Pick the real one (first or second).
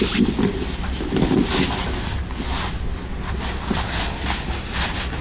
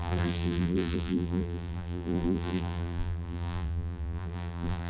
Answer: first